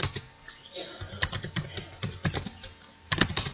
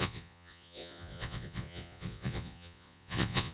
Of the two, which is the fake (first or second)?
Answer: second